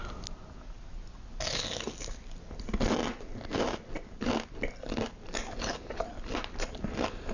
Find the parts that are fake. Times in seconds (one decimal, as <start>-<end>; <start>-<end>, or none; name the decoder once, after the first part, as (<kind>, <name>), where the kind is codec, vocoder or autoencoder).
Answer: none